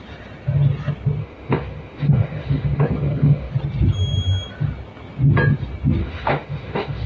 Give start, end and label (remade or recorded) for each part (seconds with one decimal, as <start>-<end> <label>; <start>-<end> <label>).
0.0-1.2 recorded; 1.2-3.5 remade; 3.5-6.0 recorded; 6.0-7.1 remade